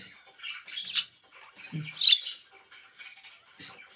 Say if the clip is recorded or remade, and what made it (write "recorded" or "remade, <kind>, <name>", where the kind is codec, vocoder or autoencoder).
recorded